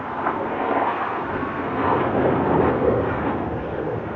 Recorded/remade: remade